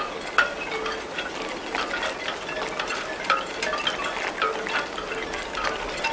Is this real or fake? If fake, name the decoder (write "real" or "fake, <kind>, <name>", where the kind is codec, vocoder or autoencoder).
real